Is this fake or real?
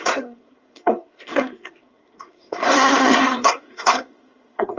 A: fake